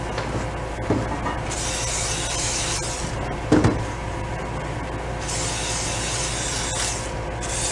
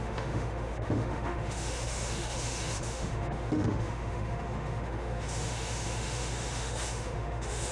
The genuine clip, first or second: first